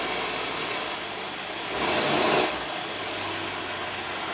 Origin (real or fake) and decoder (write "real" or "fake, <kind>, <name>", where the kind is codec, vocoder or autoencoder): real